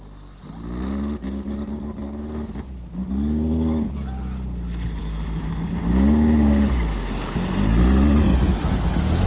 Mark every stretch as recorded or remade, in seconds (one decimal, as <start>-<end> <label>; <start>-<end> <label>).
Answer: 0.0-9.3 recorded